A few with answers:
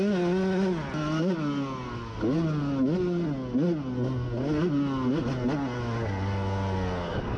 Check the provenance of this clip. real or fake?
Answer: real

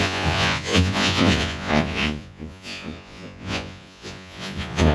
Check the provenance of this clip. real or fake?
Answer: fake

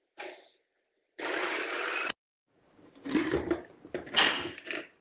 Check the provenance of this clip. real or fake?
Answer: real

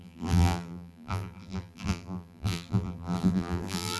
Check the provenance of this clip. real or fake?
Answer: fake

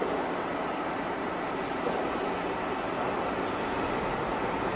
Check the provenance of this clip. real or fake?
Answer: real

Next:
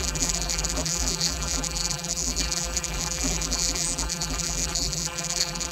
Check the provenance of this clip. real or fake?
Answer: fake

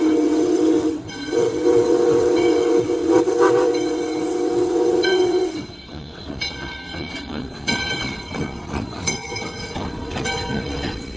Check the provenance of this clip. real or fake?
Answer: fake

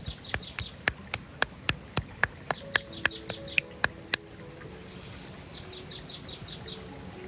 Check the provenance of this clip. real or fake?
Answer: real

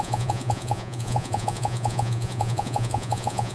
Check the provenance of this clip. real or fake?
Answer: fake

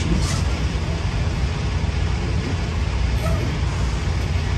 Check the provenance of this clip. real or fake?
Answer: real